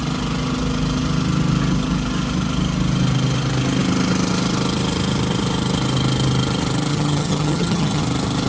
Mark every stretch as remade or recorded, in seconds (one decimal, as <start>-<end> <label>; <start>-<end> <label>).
0.0-6.9 recorded; 6.9-8.0 remade; 8.0-8.5 recorded